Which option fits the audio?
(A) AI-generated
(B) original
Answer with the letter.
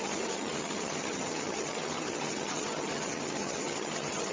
A